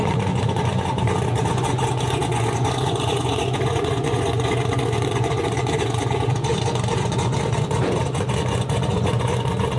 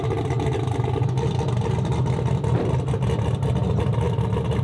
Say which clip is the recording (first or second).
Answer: second